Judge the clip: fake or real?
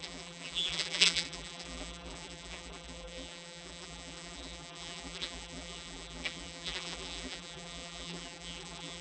fake